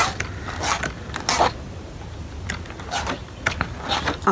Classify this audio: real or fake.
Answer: real